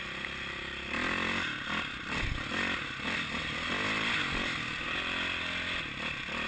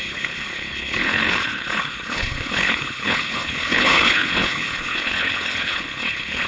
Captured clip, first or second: first